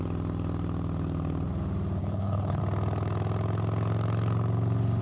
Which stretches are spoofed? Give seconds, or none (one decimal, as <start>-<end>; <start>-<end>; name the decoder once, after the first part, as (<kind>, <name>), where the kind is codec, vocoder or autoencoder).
2.0-2.6 (codec, HILCodec)